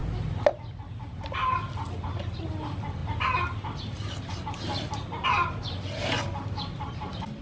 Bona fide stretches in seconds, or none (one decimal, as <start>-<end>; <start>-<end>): 0.0-7.4